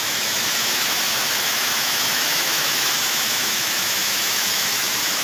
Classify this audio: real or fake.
fake